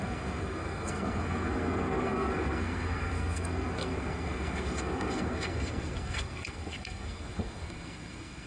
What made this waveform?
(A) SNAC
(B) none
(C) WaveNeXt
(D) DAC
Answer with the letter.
A